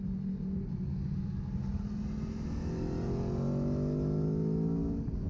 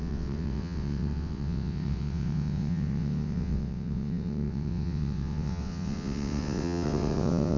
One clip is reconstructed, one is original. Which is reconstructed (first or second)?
second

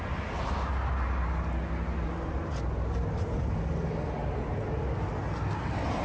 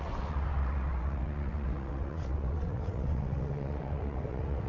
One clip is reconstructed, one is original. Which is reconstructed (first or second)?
second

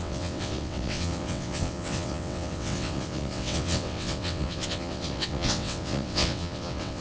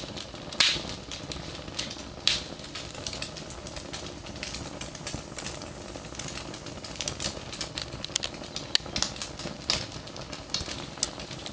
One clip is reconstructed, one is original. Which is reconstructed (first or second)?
first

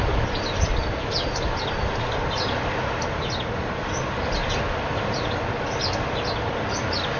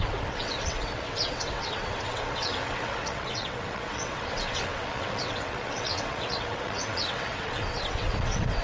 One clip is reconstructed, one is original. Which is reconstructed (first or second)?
second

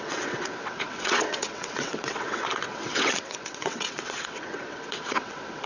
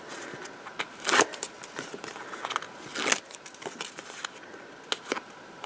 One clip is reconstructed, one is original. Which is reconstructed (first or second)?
first